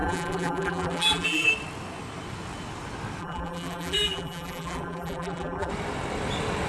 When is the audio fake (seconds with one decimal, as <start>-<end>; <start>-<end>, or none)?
0.0-1.5; 3.2-5.7